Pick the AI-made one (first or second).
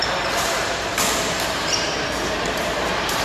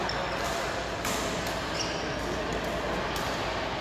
first